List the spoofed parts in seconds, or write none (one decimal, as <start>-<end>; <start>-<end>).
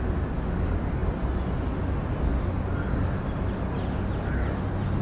none